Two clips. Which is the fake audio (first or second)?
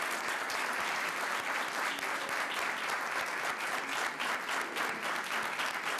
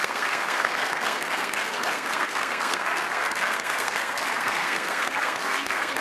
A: second